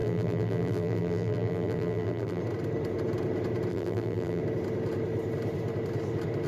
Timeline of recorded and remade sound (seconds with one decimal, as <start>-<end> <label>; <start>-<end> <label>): 0.0-2.4 remade; 2.4-3.7 recorded; 3.7-4.4 remade; 4.4-6.5 recorded